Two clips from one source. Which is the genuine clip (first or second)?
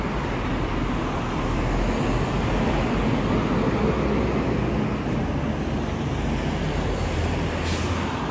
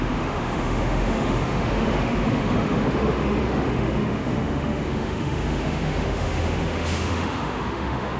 first